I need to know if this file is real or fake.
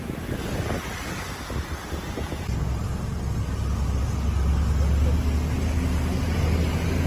real